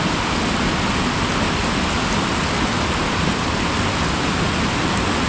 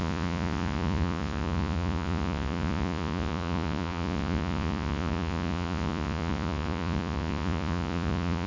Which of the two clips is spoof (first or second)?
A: second